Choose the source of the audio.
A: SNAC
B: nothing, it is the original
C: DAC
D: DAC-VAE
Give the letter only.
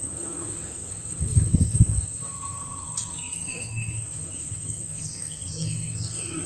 A